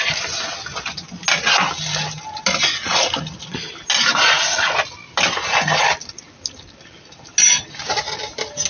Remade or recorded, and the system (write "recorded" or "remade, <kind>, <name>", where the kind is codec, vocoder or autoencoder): recorded